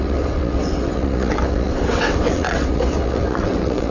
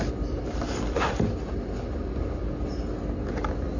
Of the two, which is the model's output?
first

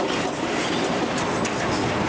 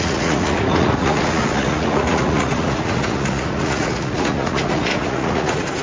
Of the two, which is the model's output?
second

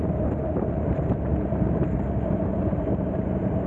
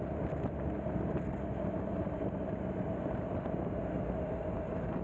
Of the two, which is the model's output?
first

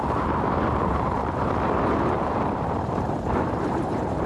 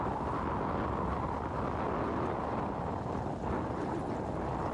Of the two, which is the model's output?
first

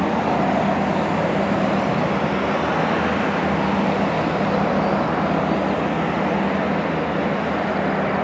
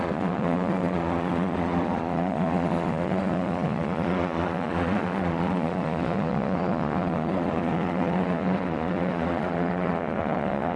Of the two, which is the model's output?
second